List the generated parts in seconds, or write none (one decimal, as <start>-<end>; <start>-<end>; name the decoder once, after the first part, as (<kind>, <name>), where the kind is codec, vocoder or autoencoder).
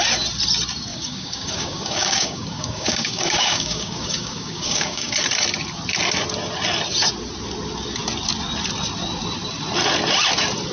0.9-5.1 (codec, DAC)